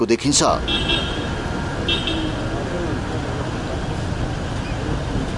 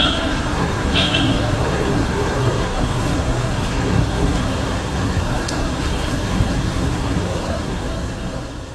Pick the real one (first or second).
first